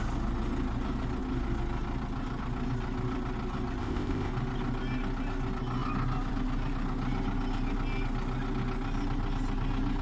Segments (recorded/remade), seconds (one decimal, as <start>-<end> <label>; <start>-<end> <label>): 0.0-3.8 recorded; 3.8-4.3 remade; 4.3-10.0 recorded